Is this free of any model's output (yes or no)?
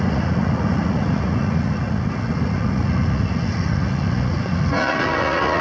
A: no